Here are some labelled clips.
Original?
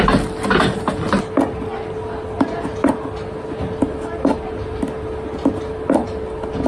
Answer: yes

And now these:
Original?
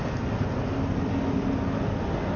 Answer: yes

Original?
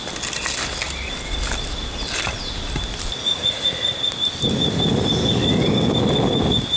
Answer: yes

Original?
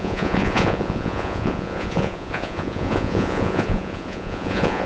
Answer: no